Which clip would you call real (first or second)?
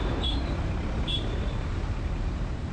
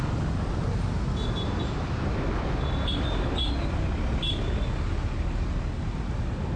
second